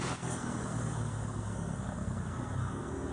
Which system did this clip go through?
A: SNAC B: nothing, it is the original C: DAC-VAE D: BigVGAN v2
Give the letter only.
A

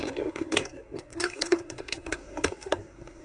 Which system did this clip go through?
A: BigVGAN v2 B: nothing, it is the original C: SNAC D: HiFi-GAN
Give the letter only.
C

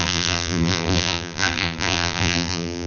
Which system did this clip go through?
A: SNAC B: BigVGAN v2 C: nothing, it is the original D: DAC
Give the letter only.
B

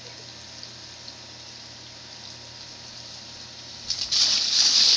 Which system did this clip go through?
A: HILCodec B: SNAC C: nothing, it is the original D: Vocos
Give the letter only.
C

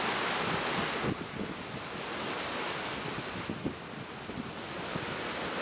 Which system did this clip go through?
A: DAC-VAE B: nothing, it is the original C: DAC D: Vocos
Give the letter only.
B